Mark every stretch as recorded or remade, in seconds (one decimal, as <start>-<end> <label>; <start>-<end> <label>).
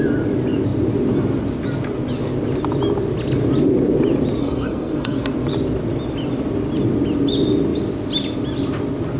0.0-4.4 recorded; 4.4-5.2 remade; 5.2-9.2 recorded